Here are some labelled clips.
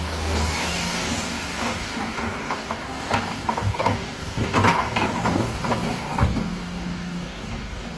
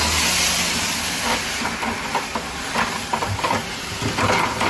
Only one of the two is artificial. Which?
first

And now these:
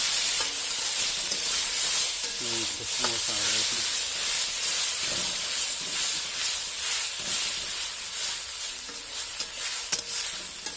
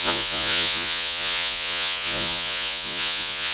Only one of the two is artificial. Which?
second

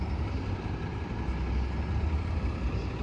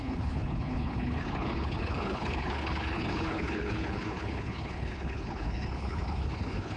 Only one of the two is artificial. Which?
second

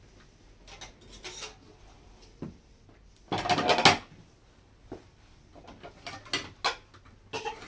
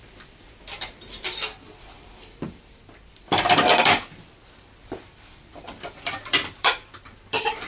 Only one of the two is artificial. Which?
second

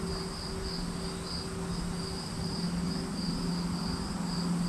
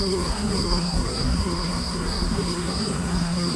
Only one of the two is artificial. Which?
second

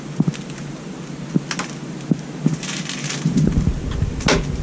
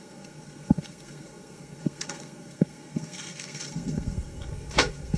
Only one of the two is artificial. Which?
second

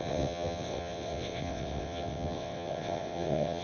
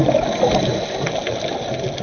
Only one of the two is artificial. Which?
first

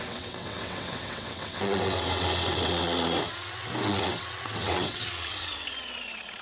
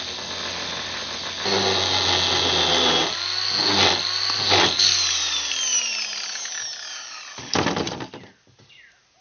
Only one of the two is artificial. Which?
first